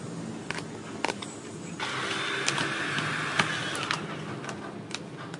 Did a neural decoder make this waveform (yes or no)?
no